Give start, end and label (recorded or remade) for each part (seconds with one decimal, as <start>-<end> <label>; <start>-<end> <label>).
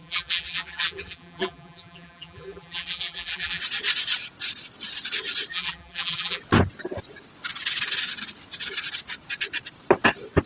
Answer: 0.0-3.6 remade; 3.6-5.5 recorded; 5.5-6.4 remade; 6.4-10.5 recorded